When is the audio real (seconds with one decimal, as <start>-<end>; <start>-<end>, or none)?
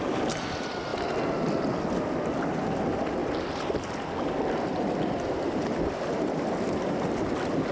0.0-7.7